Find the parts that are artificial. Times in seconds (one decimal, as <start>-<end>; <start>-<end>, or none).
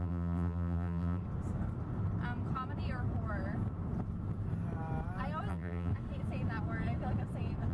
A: 0.0-1.2; 5.5-5.9